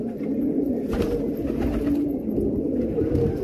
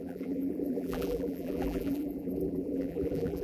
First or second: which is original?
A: first